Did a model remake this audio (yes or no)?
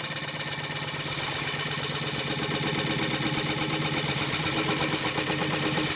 no